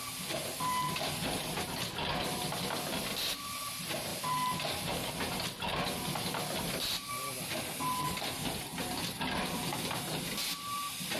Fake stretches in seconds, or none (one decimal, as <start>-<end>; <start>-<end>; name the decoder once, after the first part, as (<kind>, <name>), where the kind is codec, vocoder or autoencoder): none